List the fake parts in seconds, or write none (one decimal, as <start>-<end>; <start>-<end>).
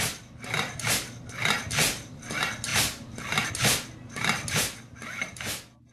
none